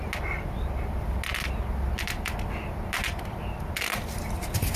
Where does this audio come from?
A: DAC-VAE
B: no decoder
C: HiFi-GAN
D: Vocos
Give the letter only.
B